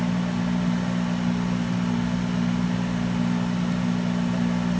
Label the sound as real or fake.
real